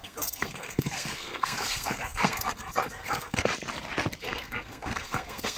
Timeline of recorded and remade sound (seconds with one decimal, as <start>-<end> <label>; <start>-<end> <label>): 0.0-3.5 remade; 3.5-4.2 recorded; 4.2-5.6 remade